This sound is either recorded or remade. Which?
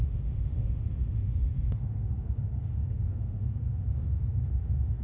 remade